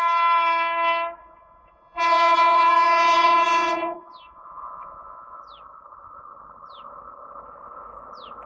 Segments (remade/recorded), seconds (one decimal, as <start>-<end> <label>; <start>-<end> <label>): 0.0-1.2 recorded; 1.2-5.4 remade; 5.4-8.5 recorded